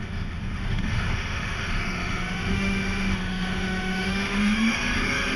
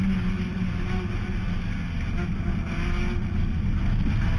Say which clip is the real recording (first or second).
second